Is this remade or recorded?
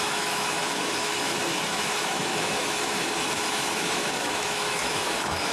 remade